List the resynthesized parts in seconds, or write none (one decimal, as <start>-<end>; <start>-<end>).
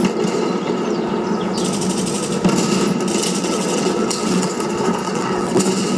3.4-4.5; 5.0-6.0